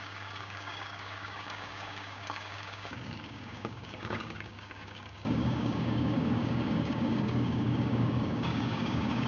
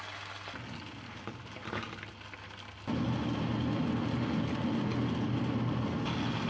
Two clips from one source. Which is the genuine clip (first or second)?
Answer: second